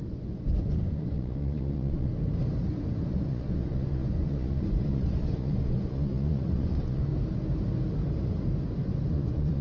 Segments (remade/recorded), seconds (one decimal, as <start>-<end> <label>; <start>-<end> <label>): 0.0-2.1 remade; 2.1-3.1 recorded; 3.1-7.1 remade; 7.1-9.1 recorded; 9.1-9.6 remade